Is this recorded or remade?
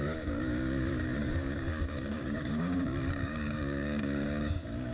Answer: remade